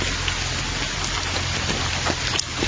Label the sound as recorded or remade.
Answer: recorded